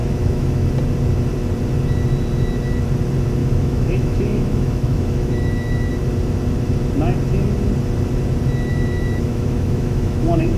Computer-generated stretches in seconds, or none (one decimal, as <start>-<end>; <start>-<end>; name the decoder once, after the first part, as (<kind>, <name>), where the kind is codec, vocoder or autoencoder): 0.0-0.7 (autoencoder, DAC-VAE); 3.4-5.9; 8.7-10.6